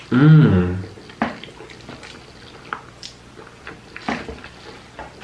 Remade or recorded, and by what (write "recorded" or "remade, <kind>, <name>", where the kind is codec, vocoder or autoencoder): recorded